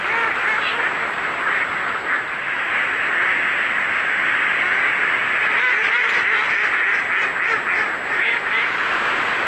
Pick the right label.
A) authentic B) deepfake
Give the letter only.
A